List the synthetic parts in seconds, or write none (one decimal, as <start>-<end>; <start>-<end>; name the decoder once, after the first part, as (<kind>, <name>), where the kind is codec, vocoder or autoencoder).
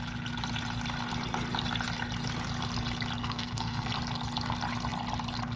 3.2-3.9 (codec, SNAC)